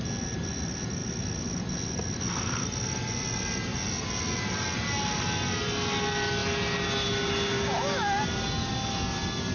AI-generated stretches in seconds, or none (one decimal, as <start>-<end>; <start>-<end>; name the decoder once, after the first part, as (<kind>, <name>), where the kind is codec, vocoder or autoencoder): none